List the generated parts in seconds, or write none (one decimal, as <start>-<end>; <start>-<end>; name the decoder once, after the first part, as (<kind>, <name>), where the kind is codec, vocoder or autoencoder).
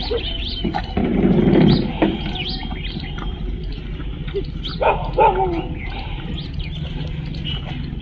none